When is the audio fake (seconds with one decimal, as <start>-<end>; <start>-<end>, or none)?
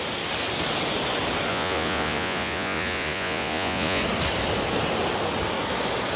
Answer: 1.5-4.0